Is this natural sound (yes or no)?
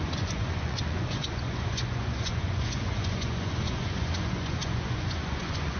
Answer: no